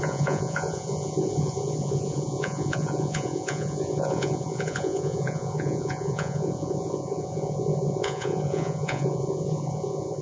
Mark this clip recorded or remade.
remade